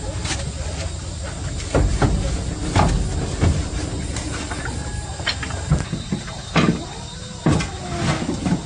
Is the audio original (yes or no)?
yes